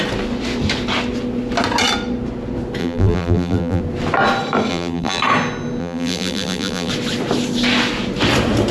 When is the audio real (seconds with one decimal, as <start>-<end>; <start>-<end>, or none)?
0.0-2.8; 3.8-4.7; 5.2-5.8; 6.9-8.7